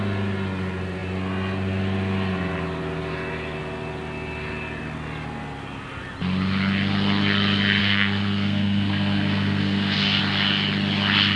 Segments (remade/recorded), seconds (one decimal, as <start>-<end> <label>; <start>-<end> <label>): 0.0-7.8 recorded; 7.8-10.2 remade; 10.2-11.4 recorded